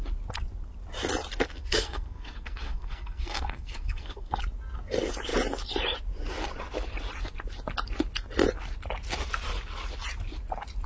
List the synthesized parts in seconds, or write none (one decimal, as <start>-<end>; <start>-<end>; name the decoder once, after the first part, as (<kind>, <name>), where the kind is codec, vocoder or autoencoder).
1.6-4.4 (codec, SNAC)